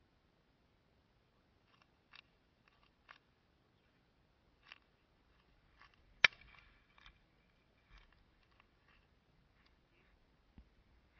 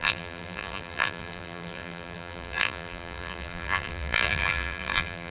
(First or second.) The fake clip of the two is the second